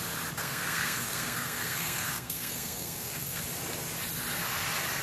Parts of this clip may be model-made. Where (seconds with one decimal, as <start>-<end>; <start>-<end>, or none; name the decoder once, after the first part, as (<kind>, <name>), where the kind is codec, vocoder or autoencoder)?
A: 0.4-3.4 (codec, SNAC)